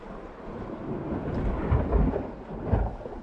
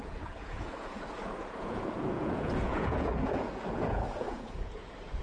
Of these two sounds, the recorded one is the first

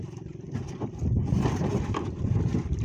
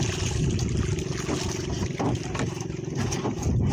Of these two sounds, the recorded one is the second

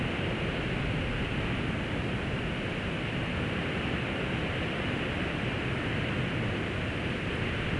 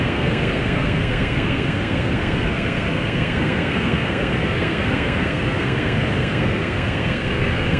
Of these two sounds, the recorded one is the first